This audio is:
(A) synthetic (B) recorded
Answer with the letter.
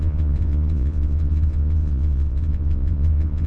A